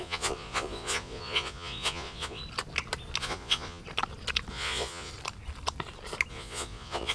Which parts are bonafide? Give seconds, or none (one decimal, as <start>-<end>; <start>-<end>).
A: 2.4-3.2; 3.8-4.5; 5.1-6.3